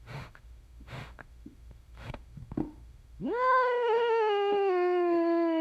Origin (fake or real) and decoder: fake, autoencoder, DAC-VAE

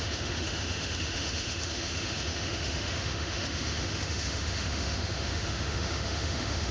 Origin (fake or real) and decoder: fake, autoencoder, DAC-VAE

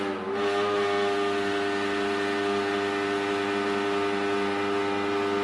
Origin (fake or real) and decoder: real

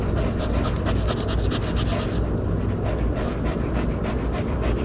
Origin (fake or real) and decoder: real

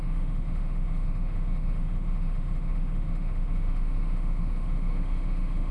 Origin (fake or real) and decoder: fake, autoencoder, DAC-VAE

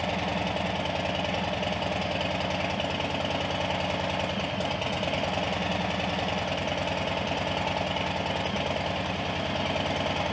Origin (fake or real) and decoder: real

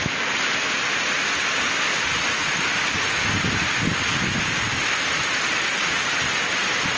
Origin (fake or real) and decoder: real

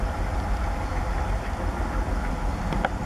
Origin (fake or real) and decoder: real